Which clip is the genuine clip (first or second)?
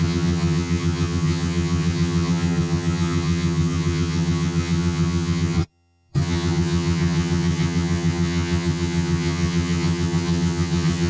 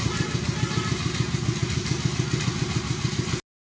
second